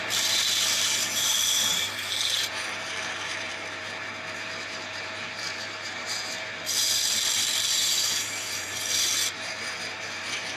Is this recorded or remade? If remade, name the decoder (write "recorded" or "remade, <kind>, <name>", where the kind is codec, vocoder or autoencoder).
remade, vocoder, BigVGAN v2